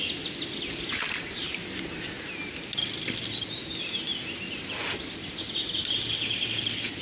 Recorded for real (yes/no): yes